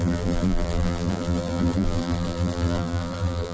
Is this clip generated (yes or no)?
yes